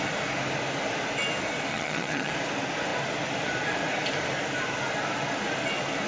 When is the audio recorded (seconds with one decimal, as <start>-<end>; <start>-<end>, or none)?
0.0-1.7; 2.3-6.1